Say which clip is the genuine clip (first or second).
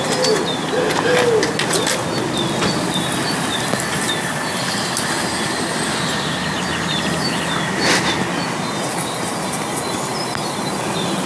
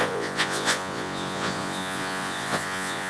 first